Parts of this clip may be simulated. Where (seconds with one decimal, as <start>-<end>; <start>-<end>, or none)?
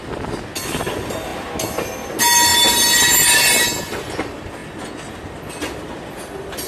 none